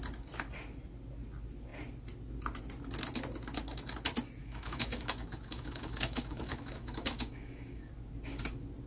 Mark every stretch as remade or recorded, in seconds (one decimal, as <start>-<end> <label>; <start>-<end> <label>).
0.0-4.4 recorded; 4.4-7.9 remade; 7.9-8.9 recorded